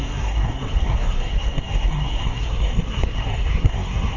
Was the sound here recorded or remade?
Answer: remade